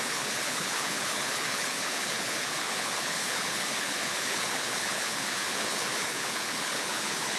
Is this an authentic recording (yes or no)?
no